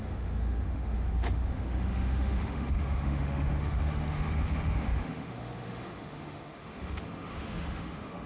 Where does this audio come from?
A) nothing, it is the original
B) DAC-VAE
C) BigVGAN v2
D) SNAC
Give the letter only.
B